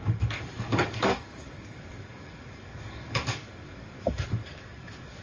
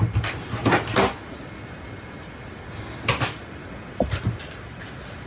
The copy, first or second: first